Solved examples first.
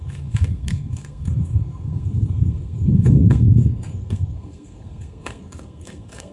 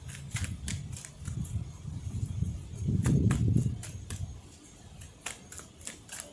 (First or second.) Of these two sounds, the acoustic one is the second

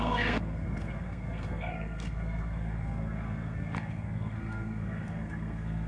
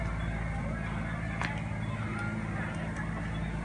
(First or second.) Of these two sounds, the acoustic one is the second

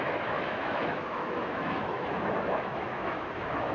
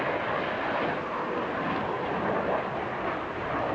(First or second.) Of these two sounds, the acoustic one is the second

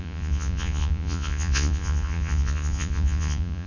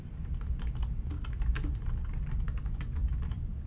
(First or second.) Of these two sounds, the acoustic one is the second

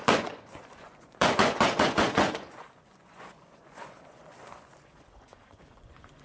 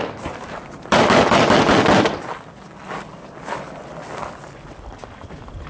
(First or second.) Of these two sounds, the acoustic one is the second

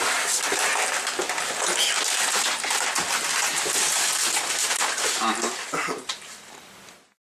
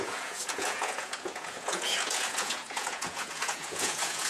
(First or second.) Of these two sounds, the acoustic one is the first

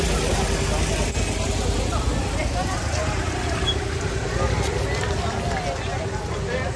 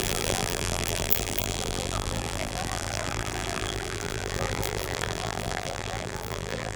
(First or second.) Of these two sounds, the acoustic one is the first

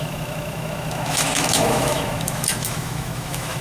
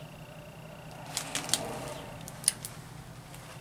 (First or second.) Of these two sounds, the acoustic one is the second